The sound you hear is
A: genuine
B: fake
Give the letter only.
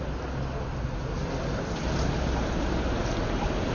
A